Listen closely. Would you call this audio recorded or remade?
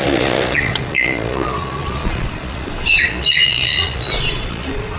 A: remade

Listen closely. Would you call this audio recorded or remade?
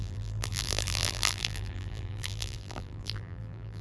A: remade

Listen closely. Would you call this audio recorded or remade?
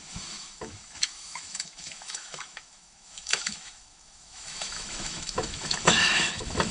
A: remade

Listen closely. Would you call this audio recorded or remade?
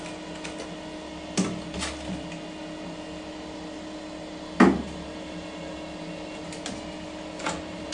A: recorded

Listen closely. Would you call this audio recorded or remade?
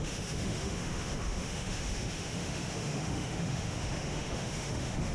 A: remade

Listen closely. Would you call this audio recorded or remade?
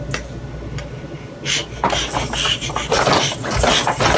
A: recorded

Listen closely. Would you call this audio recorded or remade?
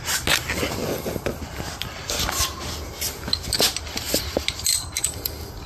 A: recorded